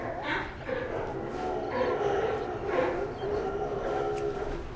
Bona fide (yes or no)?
yes